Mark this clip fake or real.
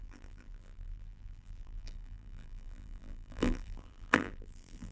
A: fake